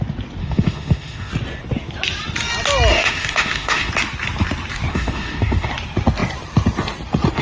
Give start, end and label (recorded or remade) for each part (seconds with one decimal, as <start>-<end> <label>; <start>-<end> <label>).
0.0-0.4 recorded; 0.4-1.3 remade; 1.3-2.9 recorded; 2.9-3.9 remade; 3.9-4.9 recorded; 4.9-5.7 remade; 5.7-7.4 recorded